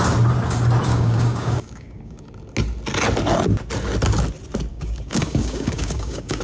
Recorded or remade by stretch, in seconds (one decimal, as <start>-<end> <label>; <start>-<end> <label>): 0.0-0.9 recorded; 0.9-2.3 remade; 2.3-4.7 recorded; 4.7-6.4 remade